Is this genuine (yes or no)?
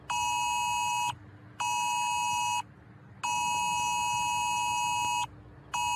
yes